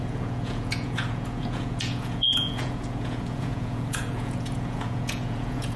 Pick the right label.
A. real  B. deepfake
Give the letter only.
B